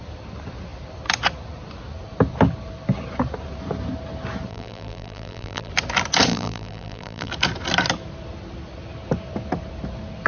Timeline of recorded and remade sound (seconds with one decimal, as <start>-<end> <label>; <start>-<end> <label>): 0.0-4.5 recorded; 4.5-5.7 remade; 5.7-6.3 recorded; 6.3-7.3 remade; 7.3-10.3 recorded